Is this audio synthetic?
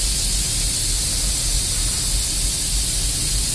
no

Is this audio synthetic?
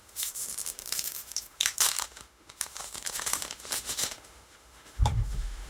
yes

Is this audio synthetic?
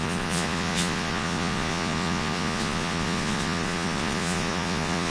yes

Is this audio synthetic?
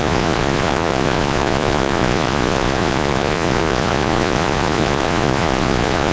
yes